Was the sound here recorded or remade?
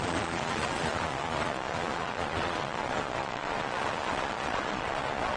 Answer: remade